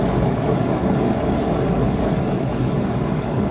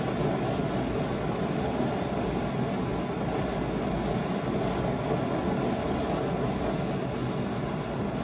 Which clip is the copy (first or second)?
first